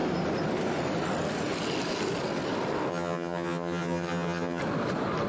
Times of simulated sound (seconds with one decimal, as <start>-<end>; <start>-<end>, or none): 2.9-4.6